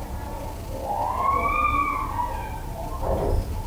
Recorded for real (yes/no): no